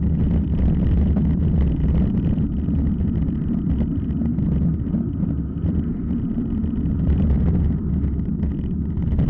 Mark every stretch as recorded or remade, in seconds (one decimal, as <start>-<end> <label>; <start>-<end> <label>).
0.0-9.3 recorded